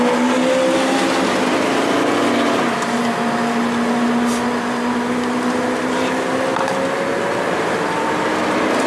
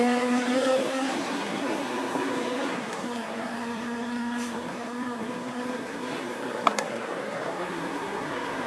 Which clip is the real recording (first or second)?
first